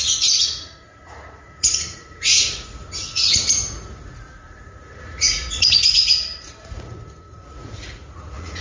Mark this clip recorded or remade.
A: remade